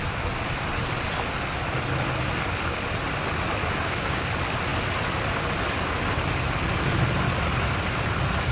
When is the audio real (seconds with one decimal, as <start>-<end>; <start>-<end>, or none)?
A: 0.0-3.6; 4.3-8.5